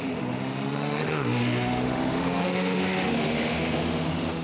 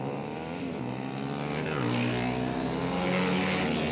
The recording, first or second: second